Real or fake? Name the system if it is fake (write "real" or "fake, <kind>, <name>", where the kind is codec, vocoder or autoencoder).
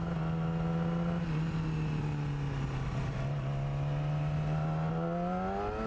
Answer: real